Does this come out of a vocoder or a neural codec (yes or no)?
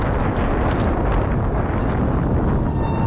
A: no